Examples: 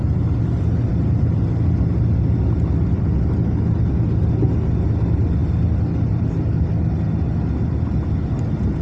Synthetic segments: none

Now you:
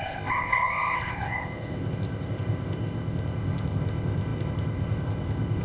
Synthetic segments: 0.0-5.6 (codec, ZipCodec)

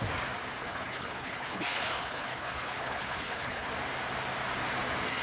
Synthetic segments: 0.6-3.7 (codec, HILCodec)

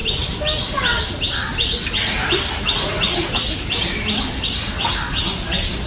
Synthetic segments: none